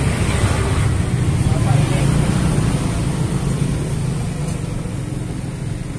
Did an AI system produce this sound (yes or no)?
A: no